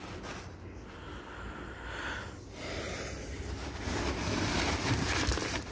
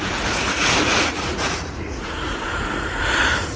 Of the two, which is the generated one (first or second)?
second